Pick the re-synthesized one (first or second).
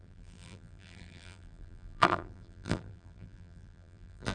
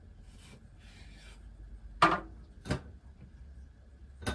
first